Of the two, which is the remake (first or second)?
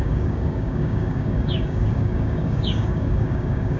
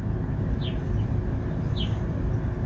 first